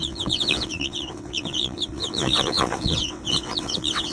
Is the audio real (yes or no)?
no